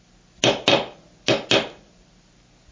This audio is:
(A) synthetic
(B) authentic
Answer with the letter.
B